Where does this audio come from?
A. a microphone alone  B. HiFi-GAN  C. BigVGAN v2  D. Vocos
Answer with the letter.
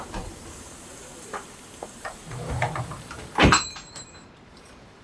C